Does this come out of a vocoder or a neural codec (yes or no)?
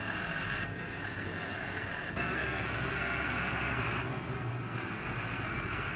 yes